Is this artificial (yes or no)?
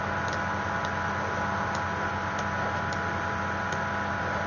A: no